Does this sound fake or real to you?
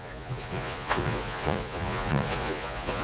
fake